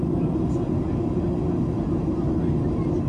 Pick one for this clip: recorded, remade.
recorded